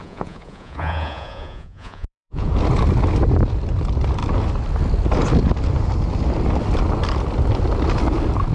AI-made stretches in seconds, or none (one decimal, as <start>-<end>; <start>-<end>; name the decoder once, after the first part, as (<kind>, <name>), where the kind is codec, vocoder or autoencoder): 0.0-2.5 (vocoder, Vocos)